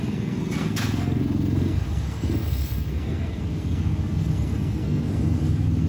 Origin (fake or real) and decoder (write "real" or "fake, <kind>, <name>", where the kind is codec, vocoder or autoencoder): fake, codec, SNAC